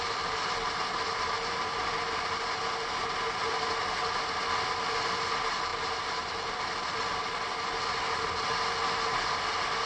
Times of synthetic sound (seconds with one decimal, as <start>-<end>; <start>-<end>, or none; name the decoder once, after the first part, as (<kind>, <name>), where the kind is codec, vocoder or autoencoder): none